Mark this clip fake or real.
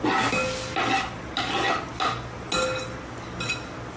real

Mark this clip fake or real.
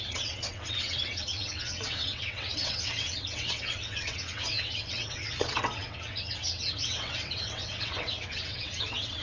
fake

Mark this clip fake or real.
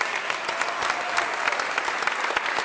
real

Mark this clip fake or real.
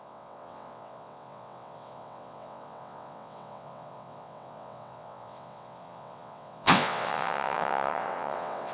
fake